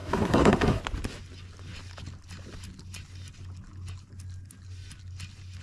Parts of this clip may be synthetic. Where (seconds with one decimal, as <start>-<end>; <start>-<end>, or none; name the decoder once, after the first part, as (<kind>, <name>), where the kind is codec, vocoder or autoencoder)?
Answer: 0.0-0.8 (codec, SNAC)